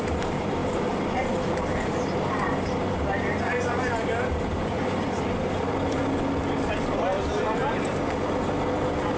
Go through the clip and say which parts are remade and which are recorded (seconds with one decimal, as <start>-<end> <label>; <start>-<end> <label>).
0.0-0.6 remade; 0.6-3.9 recorded; 3.9-6.0 remade; 6.0-6.9 recorded; 6.9-9.2 remade